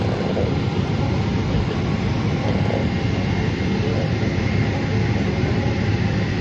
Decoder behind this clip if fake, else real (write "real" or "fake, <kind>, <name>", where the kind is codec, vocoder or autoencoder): fake, vocoder, BigVGAN v2